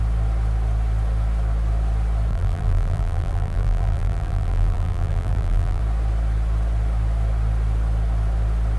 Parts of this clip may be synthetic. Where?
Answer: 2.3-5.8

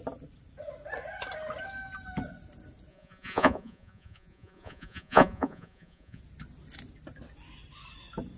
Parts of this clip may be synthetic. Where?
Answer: 2.9-6.2

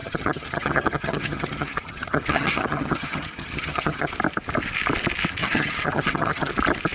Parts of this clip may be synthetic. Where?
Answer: 0.0-4.1; 5.4-6.5

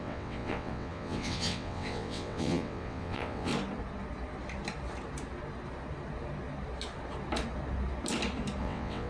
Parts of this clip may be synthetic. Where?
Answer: 0.0-3.5; 8.6-9.1